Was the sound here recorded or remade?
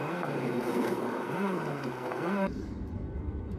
remade